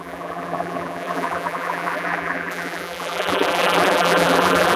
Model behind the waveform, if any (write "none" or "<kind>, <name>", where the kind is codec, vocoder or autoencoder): vocoder, BigVGAN v2